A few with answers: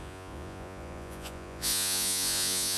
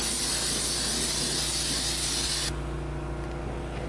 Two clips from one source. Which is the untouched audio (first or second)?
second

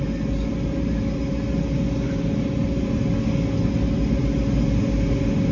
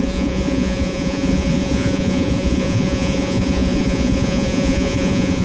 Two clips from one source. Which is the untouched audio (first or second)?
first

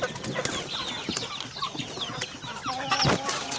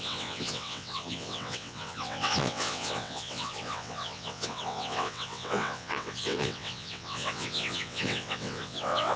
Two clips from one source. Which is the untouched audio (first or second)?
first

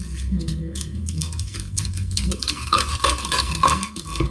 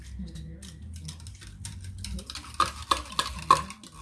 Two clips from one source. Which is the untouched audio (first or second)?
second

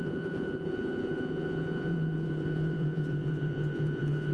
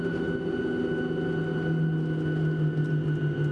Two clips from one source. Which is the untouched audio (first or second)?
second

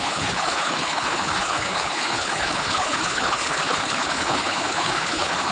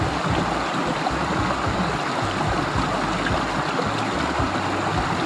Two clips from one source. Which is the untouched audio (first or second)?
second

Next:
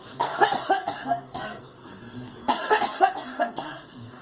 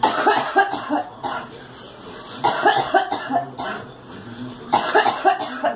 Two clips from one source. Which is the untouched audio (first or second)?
second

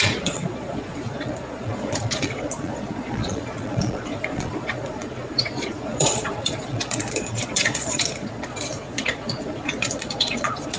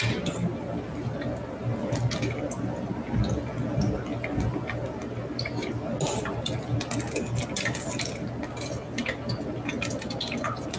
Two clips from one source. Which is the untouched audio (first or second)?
second